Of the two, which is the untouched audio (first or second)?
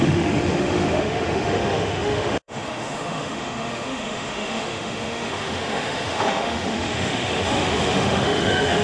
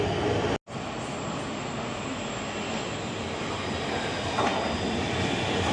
second